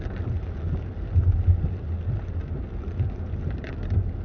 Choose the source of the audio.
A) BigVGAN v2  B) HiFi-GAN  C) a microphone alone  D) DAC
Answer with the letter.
C